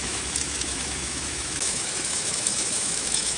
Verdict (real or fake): fake